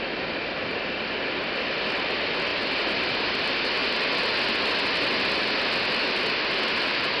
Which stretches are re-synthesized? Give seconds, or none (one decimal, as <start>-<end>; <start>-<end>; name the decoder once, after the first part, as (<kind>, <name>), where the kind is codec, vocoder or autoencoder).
none